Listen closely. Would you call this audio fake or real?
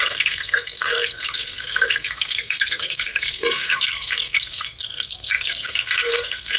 fake